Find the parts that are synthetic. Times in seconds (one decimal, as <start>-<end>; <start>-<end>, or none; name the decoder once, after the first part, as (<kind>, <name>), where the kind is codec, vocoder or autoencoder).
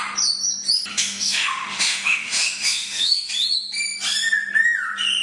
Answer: 0.9-3.3 (autoencoder, DAC-VAE)